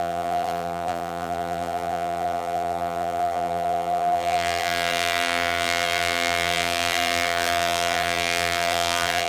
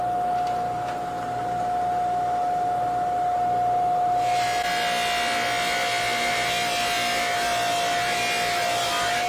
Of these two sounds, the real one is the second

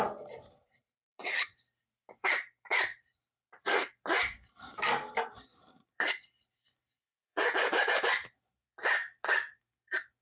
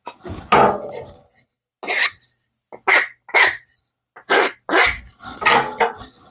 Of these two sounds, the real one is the second